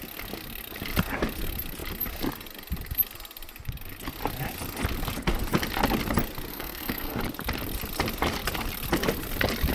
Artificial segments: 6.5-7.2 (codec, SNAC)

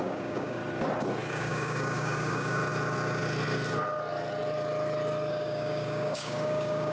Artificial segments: 0.0-0.6 (codec, DAC); 1.3-2.6; 5.3-6.9

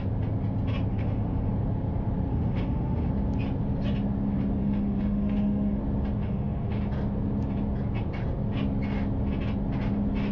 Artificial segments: 0.9-1.5 (autoencoder, DAC-VAE); 2.3-3.1; 4.6-5.8; 6.2-6.8

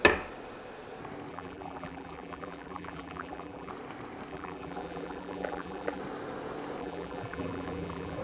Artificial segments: 1.3-3.7 (vocoder, BigVGAN v2); 4.3-6.0; 6.8-8.2

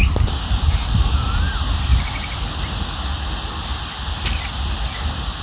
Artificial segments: none

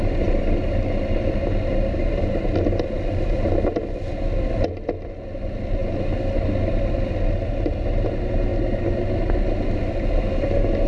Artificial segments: none

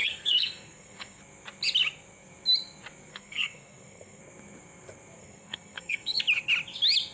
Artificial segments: 0.0-1.2 (codec, SNAC); 3.1-4.2; 5.2-6.2

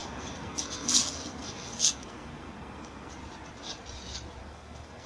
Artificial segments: 0.0-3.1 (codec, SNAC); 4.4-5.1